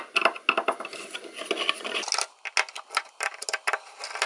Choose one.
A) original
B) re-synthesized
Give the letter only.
A